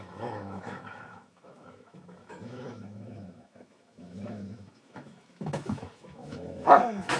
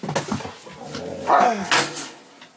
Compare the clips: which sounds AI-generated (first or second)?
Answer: first